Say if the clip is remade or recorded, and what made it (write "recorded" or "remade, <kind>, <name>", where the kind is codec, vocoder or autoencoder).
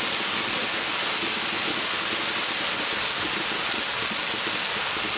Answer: recorded